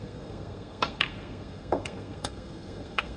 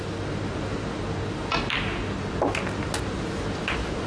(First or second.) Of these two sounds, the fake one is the first